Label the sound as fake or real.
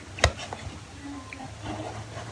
real